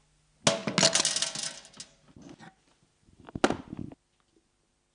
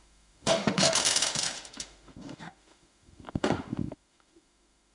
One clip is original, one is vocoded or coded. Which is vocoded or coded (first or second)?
second